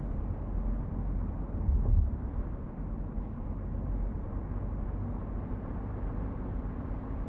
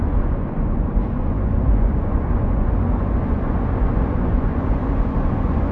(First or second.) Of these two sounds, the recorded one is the first